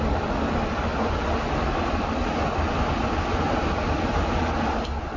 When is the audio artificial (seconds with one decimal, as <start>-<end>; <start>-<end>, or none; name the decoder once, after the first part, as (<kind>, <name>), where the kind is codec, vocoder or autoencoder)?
none